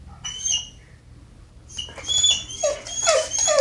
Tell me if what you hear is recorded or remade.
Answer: recorded